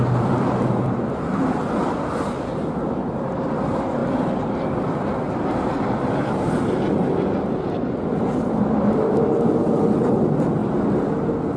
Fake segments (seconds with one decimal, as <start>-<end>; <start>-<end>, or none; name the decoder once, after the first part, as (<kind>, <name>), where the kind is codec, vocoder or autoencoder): 4.0-5.4 (vocoder, BigVGAN v2); 10.6-11.6